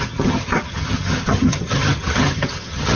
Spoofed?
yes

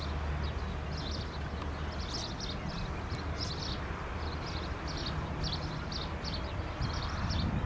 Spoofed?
no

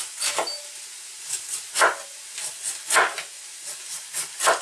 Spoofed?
no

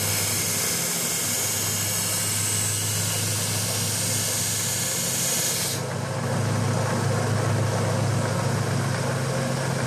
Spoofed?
no